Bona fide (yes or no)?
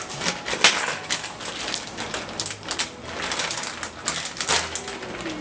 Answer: yes